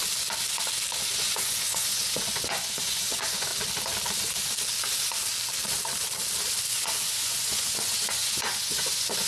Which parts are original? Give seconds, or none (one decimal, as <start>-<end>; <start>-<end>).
0.0-1.1; 3.5-6.7